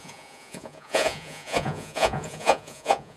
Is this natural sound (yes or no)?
no